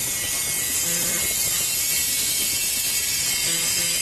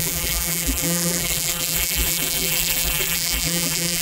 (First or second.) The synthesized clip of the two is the second